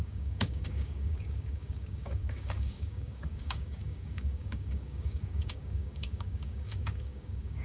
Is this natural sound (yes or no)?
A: no